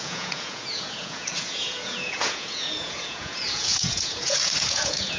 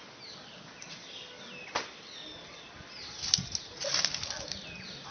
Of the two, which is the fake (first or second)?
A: first